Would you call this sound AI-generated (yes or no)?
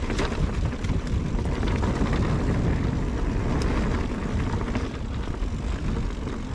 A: no